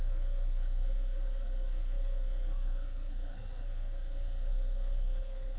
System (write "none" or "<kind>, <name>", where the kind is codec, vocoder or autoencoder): codec, SNAC